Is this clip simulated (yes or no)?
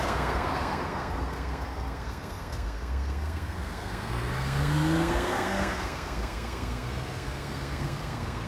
yes